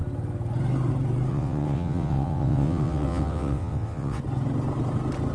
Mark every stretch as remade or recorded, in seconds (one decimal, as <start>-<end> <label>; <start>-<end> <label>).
0.0-1.3 recorded; 1.3-4.2 remade; 4.2-5.3 recorded